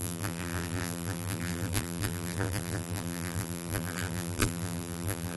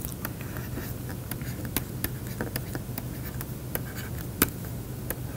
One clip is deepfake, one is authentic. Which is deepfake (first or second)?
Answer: first